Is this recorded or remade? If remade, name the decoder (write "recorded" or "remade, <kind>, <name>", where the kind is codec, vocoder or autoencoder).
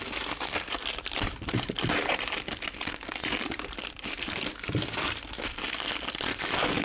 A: remade, vocoder, BigVGAN v2